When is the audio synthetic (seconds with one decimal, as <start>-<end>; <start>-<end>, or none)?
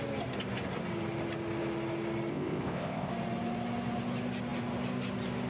2.3-3.1